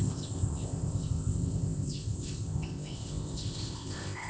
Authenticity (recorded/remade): remade